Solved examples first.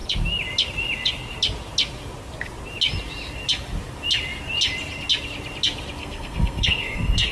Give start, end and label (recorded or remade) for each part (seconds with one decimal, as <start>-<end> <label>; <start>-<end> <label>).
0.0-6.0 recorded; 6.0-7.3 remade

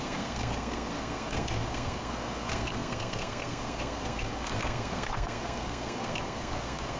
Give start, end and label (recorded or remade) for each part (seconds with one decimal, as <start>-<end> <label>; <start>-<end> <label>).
0.0-7.0 remade

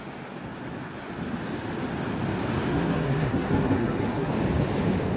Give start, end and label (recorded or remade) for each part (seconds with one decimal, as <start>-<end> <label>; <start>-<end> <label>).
0.0-2.7 recorded; 2.7-4.3 remade; 4.3-5.2 recorded

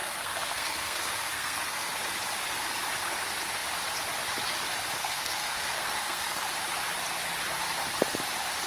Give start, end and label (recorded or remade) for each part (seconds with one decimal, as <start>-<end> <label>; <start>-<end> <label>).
0.0-1.9 remade; 1.9-5.0 recorded; 5.0-6.5 remade; 6.5-8.7 recorded

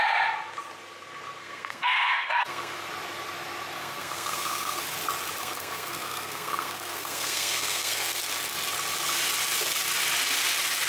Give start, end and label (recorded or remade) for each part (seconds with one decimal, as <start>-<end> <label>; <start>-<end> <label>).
0.0-1.4 recorded; 1.4-2.9 remade; 2.9-3.8 recorded; 3.8-4.8 remade; 4.8-5.4 recorded; 5.4-8.2 remade; 8.2-10.9 recorded